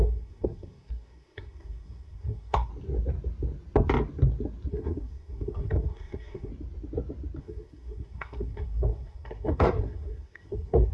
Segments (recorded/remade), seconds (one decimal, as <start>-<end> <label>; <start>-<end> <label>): 0.0-2.7 remade; 2.7-4.7 recorded; 4.7-6.5 remade; 6.5-7.4 recorded; 7.4-10.9 remade